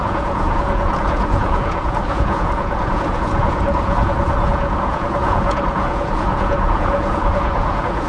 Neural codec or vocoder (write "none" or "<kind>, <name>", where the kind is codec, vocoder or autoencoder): vocoder, Vocos